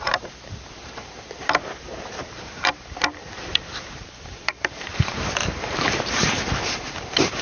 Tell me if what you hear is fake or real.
fake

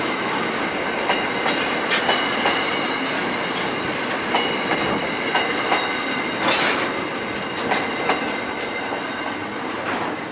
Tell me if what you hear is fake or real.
real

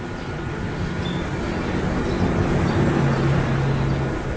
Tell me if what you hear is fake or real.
real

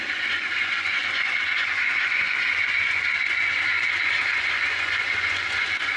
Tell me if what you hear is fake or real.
fake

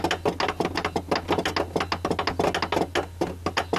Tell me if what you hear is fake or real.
real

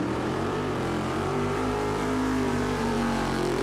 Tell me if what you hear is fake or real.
fake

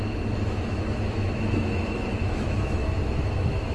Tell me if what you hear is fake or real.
fake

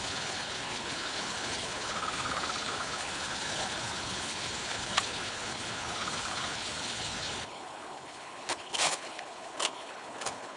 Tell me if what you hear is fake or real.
fake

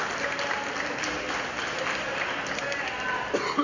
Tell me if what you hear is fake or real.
real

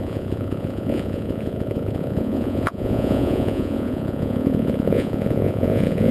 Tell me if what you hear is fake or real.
fake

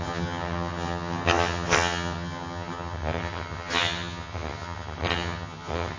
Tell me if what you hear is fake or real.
fake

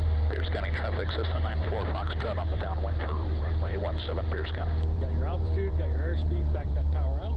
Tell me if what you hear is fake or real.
fake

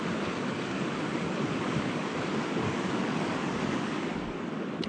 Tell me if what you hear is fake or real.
fake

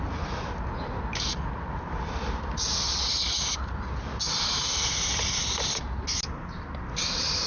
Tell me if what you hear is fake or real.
real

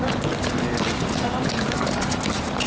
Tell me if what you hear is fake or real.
real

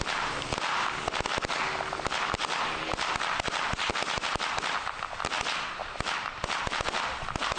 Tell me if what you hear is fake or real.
real